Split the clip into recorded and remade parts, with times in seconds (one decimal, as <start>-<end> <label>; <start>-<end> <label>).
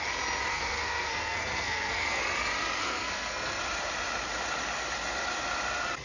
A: 0.0-0.5 recorded; 0.5-2.2 remade; 2.2-2.8 recorded; 2.8-3.6 remade; 3.6-6.0 recorded